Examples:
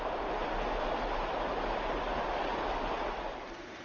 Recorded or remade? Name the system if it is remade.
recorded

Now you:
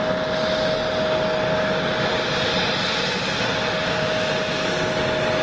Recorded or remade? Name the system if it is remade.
recorded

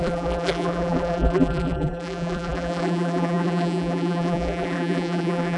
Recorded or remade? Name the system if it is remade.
remade, vocoder, BigVGAN v2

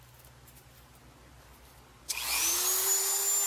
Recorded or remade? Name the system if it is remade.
recorded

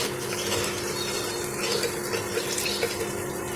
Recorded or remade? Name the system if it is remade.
recorded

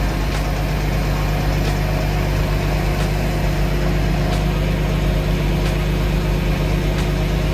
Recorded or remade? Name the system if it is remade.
recorded